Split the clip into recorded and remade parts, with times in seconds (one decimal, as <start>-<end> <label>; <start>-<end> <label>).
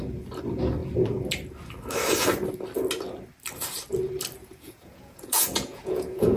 0.0-4.4 recorded; 4.4-6.4 remade